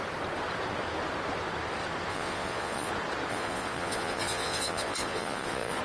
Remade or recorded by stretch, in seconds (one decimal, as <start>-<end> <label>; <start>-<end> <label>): 0.0-2.1 recorded; 2.1-2.9 remade; 2.9-3.3 recorded; 3.3-5.8 remade